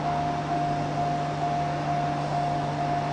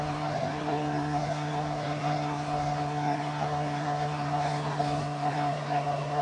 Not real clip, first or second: second